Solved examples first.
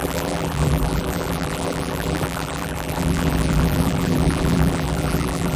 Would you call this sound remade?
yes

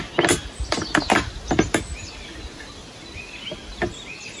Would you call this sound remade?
no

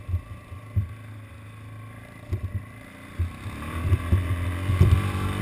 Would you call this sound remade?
no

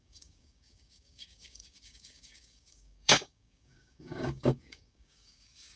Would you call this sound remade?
yes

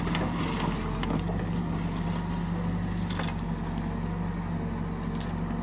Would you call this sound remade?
no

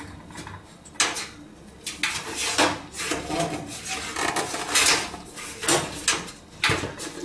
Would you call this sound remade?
no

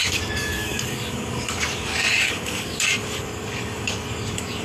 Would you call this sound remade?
yes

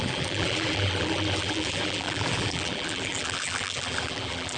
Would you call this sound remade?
yes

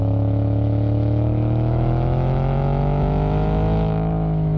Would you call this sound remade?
yes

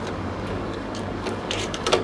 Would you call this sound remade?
yes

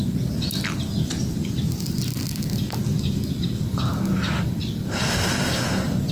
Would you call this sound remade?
no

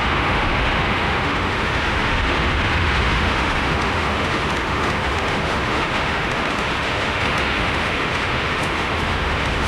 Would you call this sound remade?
yes